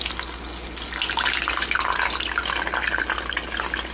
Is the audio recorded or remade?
recorded